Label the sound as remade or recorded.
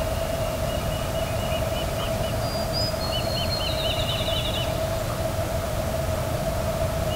recorded